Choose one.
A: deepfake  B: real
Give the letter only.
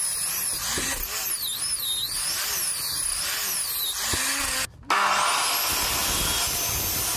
B